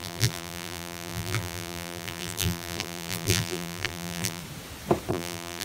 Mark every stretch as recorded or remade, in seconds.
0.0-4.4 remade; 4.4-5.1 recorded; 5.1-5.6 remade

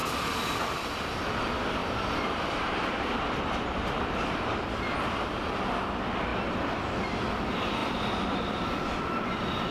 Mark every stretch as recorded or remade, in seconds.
0.0-1.2 remade; 1.2-1.8 recorded; 1.8-4.5 remade; 4.5-6.3 recorded; 6.3-7.0 remade; 7.0-7.8 recorded; 7.8-9.0 remade; 9.0-9.7 recorded

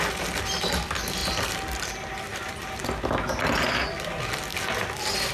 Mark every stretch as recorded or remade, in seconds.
0.0-1.2 recorded; 1.2-1.8 remade; 1.8-2.3 recorded; 2.3-2.8 remade; 2.8-4.5 recorded; 4.5-5.3 remade